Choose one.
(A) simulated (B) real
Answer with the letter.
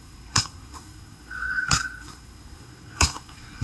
A